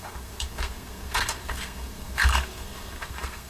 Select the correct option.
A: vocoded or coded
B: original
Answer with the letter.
A